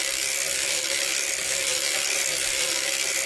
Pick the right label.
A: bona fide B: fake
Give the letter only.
A